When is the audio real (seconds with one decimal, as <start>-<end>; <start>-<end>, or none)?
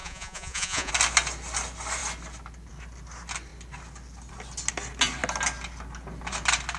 0.9-6.8